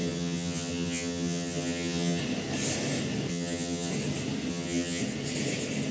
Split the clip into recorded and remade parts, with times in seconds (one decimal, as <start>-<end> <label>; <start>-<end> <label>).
0.0-2.2 remade; 2.2-3.3 recorded; 3.3-3.9 remade; 3.9-4.5 recorded; 4.5-5.0 remade; 5.0-5.9 recorded